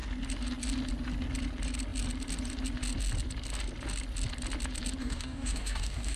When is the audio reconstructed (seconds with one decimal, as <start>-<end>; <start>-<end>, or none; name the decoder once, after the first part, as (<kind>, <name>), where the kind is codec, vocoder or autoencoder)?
5.0-6.2 (codec, DAC)